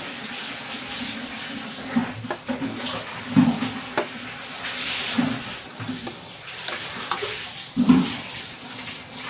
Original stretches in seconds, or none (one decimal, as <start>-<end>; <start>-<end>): 0.0-9.3

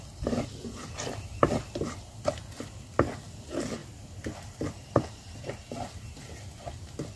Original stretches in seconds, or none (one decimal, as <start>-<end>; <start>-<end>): 0.0-7.2

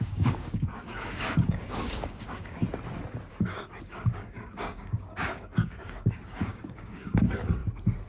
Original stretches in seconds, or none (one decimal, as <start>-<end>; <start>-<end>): 2.6-3.3; 7.6-8.1

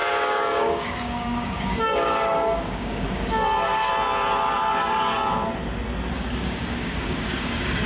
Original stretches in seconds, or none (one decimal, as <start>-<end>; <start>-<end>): 3.9-6.1

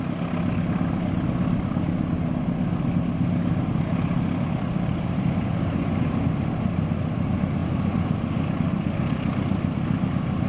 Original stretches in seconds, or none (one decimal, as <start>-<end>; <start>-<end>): 0.0-10.5

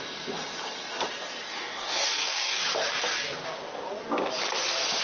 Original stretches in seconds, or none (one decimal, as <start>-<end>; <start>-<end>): 0.0-1.5; 2.6-5.0